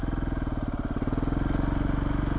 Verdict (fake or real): real